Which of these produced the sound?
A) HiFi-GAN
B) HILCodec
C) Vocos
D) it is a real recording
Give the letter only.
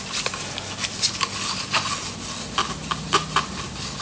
D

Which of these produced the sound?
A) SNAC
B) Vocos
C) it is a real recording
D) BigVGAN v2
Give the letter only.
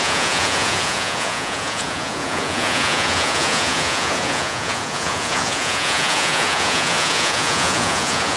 B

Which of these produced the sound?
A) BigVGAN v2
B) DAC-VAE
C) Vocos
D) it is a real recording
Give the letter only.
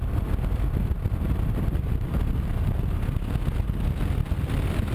D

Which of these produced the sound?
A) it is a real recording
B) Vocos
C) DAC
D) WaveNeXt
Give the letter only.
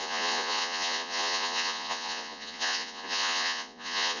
B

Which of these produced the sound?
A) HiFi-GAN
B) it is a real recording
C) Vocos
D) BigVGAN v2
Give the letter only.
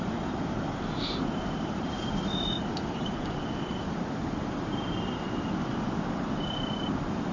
B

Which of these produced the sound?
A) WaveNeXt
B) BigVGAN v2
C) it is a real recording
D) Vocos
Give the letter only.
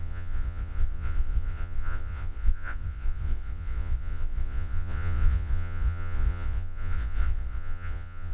D